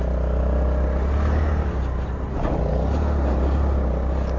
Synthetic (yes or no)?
no